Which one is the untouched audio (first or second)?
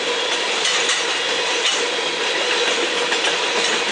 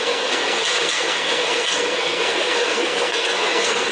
first